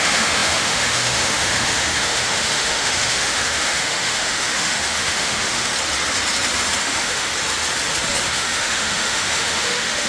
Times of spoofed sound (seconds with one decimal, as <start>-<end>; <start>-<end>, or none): 0.0-5.7; 6.8-7.3; 8.2-10.1